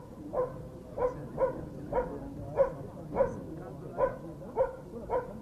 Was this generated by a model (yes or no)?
no